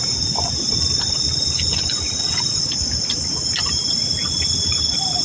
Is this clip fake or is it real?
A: real